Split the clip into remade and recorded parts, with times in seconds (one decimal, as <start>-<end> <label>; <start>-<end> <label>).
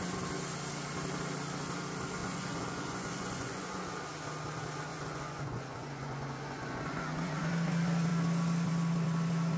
0.0-2.2 recorded; 2.2-3.8 remade; 3.8-4.9 recorded; 4.9-7.5 remade; 7.5-9.6 recorded